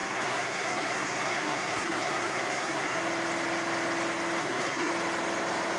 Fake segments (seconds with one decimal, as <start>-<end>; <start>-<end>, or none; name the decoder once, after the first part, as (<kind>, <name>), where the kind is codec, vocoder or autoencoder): 0.0-3.0 (codec, SNAC); 4.4-4.9